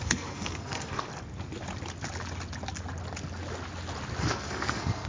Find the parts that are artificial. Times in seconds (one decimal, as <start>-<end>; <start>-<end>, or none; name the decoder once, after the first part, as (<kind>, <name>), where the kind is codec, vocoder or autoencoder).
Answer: 0.0-1.1 (codec, SNAC); 4.2-5.1